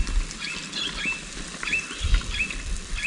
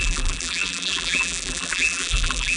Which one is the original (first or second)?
first